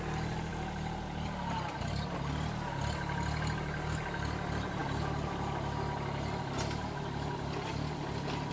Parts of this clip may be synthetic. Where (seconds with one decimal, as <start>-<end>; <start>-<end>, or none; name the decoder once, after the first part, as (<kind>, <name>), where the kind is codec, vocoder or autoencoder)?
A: none